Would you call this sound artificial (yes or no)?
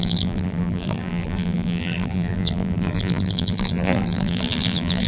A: yes